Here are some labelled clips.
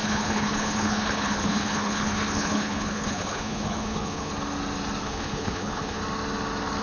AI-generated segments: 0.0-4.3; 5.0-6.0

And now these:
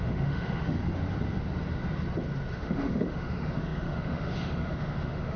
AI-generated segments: 0.0-0.8; 2.5-5.4

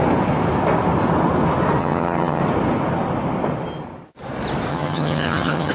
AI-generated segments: 1.8-2.4; 4.7-5.7

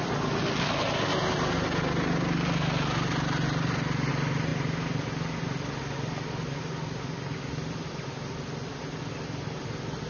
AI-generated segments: none